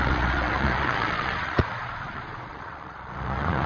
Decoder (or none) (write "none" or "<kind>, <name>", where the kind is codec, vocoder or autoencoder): vocoder, Vocos